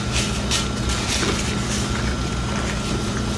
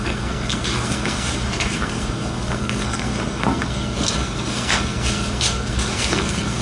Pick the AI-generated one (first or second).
second